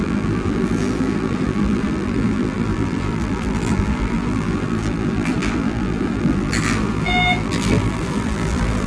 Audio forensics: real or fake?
fake